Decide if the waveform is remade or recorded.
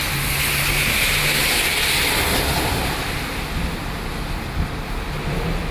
recorded